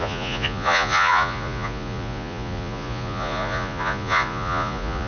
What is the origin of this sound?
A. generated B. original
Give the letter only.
A